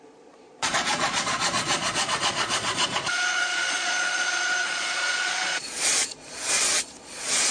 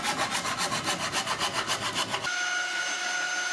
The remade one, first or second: first